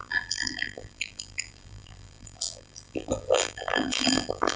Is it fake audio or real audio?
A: fake